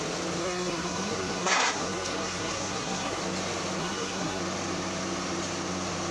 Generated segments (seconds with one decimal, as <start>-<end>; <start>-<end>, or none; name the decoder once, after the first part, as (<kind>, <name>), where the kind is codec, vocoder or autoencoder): 0.4-3.2 (codec, SNAC); 3.8-4.4